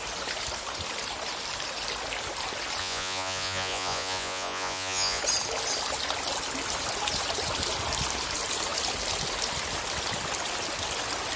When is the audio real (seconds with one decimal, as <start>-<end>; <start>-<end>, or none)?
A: 0.0-2.8; 5.2-11.4